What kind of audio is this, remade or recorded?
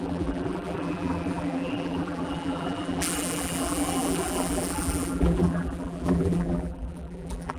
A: remade